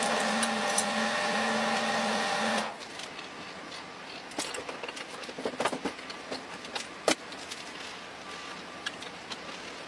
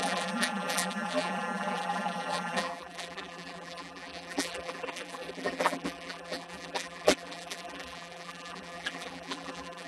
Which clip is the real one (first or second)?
first